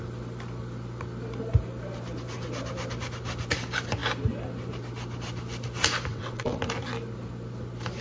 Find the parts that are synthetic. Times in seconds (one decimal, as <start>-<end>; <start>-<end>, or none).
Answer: 6.1-6.6